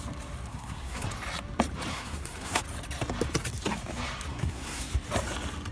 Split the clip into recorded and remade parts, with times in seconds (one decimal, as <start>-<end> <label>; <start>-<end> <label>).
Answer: 0.0-0.5 recorded; 0.5-1.1 remade; 1.1-1.9 recorded; 1.9-2.6 remade; 2.6-4.3 recorded; 4.3-4.9 remade; 4.9-5.7 recorded